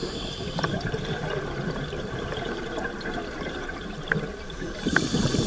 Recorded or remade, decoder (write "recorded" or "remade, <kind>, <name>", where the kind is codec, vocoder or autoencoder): remade, vocoder, BigVGAN v2